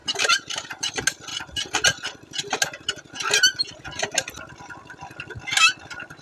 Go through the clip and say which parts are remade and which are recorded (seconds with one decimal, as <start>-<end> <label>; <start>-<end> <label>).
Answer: 0.0-0.9 remade; 0.9-6.2 recorded